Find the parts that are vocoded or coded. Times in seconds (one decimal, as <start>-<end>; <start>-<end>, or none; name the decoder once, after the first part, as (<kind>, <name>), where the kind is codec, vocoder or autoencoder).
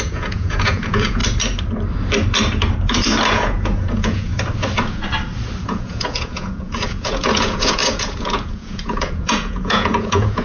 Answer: 0.0-1.2 (vocoder, Vocos); 3.3-4.3; 5.6-10.4